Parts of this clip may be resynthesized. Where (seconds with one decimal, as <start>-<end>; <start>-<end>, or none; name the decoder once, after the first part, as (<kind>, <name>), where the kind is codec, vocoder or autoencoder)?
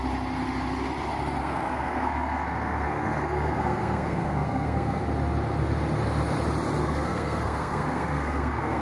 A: 1.4-5.0 (codec, SNAC); 6.8-8.8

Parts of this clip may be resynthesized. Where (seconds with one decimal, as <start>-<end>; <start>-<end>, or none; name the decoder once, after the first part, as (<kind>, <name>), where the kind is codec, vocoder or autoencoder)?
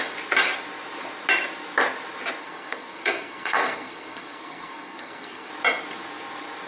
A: 2.4-5.5 (codec, SNAC)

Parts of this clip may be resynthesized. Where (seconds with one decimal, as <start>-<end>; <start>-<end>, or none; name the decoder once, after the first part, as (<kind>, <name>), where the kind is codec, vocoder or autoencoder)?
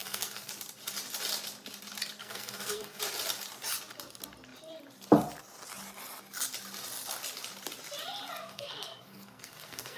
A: 0.0-0.5 (codec, SNAC); 2.2-3.0; 8.4-10.0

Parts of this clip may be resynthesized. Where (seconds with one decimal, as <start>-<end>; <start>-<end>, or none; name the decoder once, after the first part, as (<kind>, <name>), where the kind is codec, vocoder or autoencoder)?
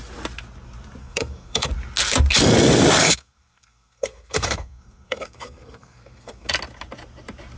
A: 1.0-1.7 (codec, SNAC); 3.0-6.5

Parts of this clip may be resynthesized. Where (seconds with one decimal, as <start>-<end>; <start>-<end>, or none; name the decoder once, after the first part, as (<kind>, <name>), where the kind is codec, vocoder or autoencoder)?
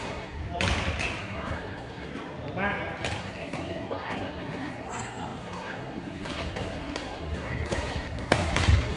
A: 0.0-0.4 (codec, SNAC); 1.2-2.1; 3.2-9.0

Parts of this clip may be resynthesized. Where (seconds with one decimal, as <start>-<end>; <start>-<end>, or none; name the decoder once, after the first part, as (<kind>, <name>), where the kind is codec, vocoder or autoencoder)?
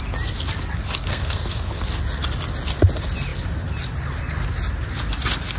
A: 1.1-1.8 (codec, SNAC)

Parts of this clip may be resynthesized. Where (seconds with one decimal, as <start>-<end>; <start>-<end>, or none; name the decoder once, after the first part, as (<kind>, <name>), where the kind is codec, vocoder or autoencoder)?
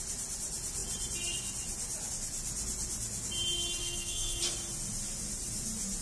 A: 3.8-4.4 (codec, SNAC)